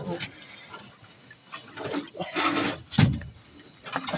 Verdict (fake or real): real